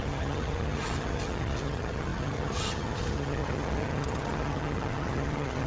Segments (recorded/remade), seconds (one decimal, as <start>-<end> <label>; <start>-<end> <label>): 0.0-5.7 remade